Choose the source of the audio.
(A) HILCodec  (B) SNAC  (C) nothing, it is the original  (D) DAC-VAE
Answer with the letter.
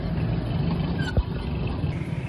C